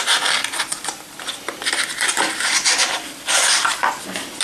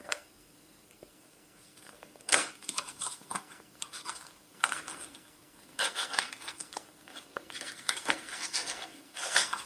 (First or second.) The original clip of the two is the first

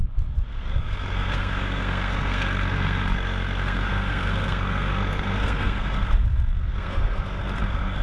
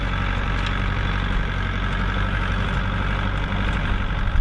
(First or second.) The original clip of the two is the second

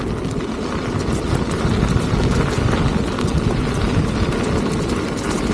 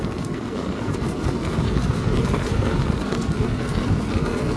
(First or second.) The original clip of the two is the first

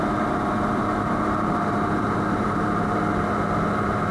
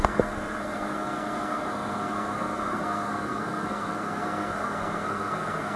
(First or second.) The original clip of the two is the first